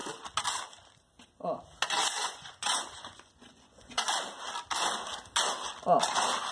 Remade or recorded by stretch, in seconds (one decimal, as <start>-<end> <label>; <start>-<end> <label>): 0.0-2.2 recorded; 2.2-4.1 remade; 4.1-6.5 recorded